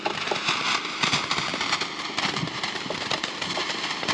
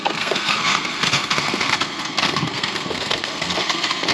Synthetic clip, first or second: second